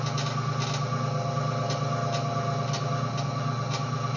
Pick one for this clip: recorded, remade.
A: recorded